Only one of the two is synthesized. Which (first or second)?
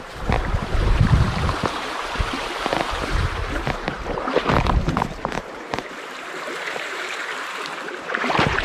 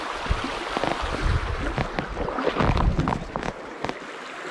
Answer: first